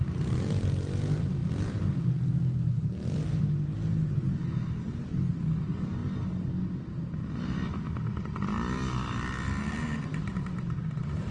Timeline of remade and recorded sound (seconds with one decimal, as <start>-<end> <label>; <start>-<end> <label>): 0.0-11.3 recorded